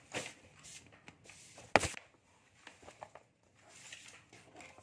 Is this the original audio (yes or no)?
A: yes